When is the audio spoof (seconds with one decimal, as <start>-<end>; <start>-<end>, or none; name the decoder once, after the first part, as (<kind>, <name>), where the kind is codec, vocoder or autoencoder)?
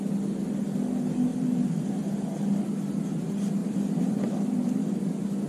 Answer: 1.3-1.9 (vocoder, BigVGAN v2); 3.6-4.9